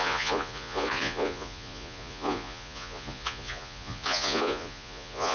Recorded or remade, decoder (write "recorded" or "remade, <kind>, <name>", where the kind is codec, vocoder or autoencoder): remade, vocoder, Vocos